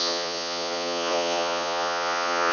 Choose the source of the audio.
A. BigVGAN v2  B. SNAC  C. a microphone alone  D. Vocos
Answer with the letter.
D